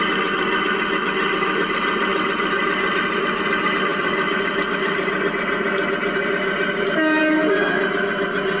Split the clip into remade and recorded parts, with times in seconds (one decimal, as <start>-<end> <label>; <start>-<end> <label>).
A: 0.0-3.9 recorded; 3.9-5.3 remade; 5.3-8.6 recorded